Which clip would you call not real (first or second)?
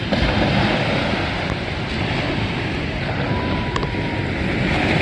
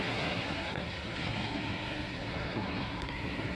second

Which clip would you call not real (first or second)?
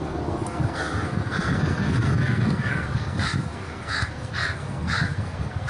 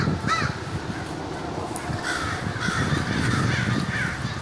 first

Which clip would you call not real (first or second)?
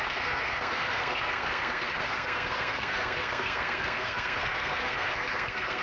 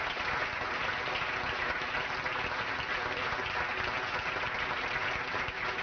first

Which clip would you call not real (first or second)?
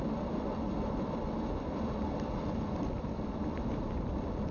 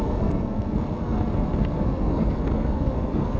second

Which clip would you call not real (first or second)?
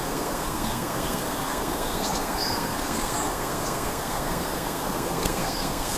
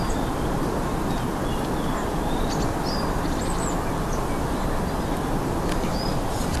first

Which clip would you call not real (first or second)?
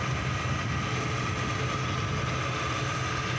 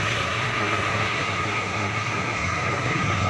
second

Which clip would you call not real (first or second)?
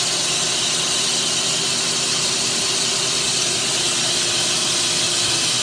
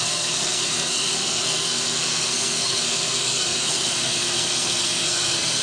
second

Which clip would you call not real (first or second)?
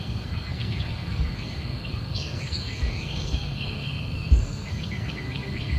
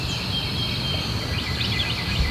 first